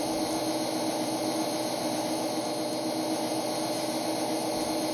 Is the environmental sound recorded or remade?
recorded